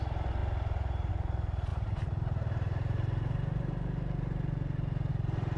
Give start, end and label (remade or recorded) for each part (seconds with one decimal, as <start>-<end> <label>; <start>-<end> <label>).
0.0-0.4 recorded; 0.4-1.1 remade; 1.1-1.7 recorded; 1.7-5.1 remade; 5.1-5.6 recorded